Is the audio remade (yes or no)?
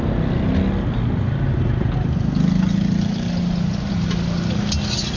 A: no